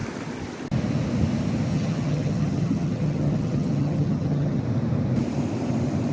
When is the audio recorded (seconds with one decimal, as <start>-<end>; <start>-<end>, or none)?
0.0-1.7; 4.6-6.1